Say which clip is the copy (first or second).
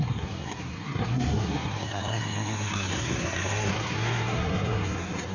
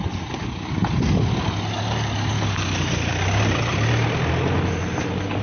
first